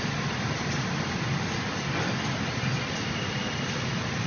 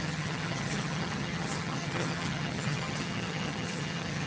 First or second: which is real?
first